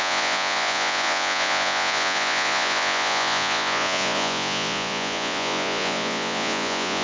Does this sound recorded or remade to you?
remade